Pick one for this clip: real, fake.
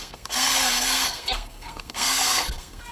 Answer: fake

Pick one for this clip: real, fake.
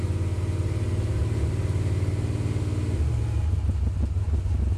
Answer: real